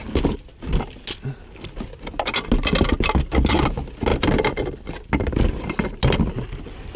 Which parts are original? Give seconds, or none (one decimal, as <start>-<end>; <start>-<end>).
0.0-7.0